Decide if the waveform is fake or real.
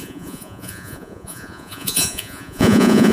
fake